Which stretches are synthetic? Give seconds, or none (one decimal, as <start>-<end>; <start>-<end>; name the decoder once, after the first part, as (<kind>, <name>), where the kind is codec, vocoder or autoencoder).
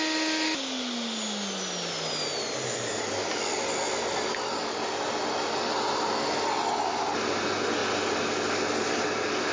none